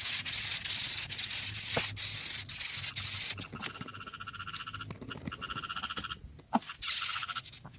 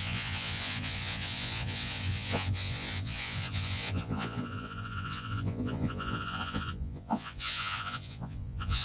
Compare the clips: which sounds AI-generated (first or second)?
second